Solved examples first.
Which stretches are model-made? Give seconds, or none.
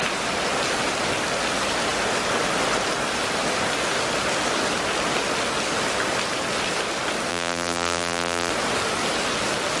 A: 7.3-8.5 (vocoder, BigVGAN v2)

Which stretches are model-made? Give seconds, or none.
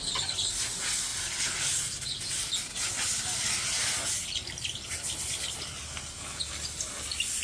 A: none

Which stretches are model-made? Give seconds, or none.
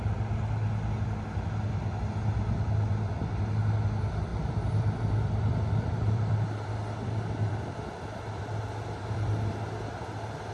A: 4.3-9.5 (vocoder, BigVGAN v2)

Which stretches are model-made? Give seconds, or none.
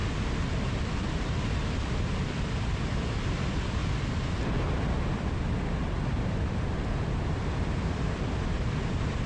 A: 2.0-3.8 (vocoder, BigVGAN v2); 4.4-9.3